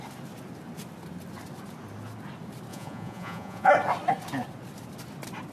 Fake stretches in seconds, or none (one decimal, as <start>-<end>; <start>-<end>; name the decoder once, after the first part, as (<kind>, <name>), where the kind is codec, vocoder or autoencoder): 2.7-3.7 (vocoder, Vocos)